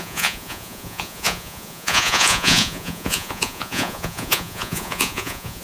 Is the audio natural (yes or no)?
no